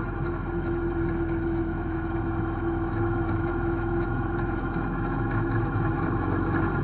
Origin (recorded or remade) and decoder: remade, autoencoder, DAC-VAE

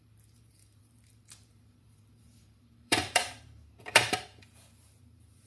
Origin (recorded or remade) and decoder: remade, vocoder, BigVGAN v2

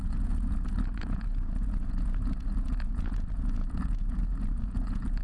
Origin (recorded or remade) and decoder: remade, vocoder, Vocos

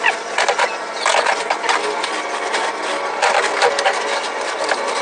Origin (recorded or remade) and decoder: recorded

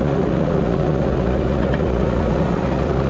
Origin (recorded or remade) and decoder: remade, vocoder, Vocos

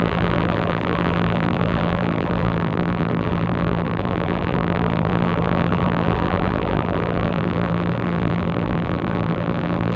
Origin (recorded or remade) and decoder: remade, vocoder, BigVGAN v2